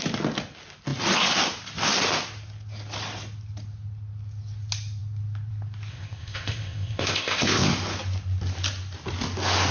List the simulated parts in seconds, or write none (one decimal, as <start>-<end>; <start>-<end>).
5.9-7.7